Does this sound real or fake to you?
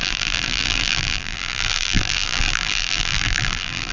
fake